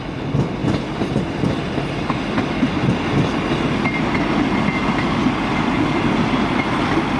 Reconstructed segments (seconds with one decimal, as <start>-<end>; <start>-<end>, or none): none